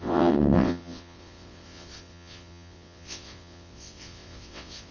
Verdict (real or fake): fake